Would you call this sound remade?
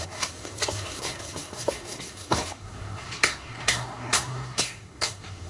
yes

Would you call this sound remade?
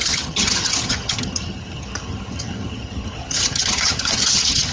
yes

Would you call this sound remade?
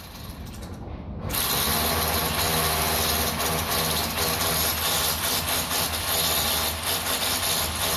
no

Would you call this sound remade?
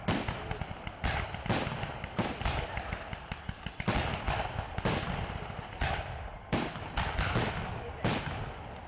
no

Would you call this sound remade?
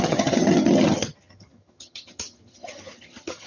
yes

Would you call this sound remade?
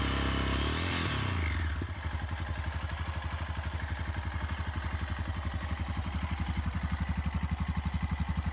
no